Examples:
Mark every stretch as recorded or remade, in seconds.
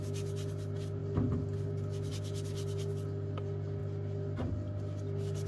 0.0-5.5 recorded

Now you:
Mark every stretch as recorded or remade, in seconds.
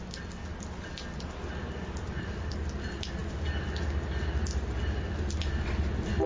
0.0-6.3 recorded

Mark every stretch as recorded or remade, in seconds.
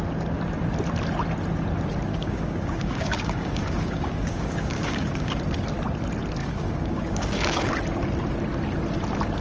0.0-2.1 recorded; 2.1-5.3 remade; 5.3-6.4 recorded; 6.4-7.7 remade; 7.7-9.4 recorded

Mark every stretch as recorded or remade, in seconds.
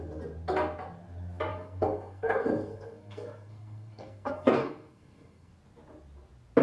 0.0-1.5 recorded; 1.5-5.5 remade; 5.5-6.6 recorded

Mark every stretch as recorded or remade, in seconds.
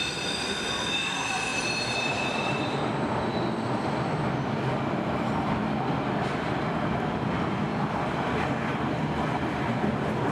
0.0-1.5 recorded; 1.5-2.6 remade; 2.6-10.3 recorded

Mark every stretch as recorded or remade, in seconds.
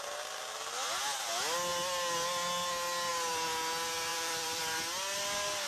0.0-4.1 recorded; 4.1-4.6 remade; 4.6-5.7 recorded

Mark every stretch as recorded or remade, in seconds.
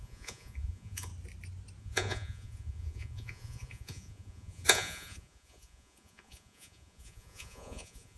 0.0-1.1 remade; 1.1-1.8 recorded; 1.8-8.2 remade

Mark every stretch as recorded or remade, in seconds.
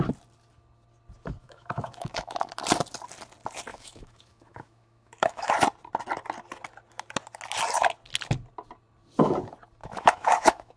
0.0-1.4 recorded; 1.4-2.5 remade; 2.5-3.7 recorded; 3.7-5.5 remade; 5.5-9.8 recorded; 9.8-10.8 remade